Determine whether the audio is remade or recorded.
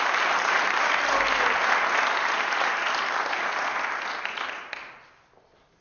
recorded